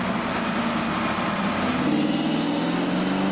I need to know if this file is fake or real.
real